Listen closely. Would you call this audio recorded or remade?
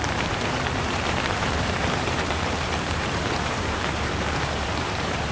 remade